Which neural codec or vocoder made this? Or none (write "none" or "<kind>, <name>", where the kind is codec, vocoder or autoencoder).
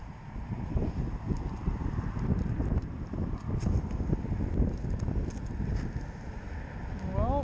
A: none